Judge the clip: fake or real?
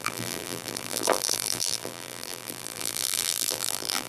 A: fake